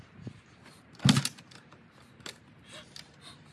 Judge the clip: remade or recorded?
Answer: recorded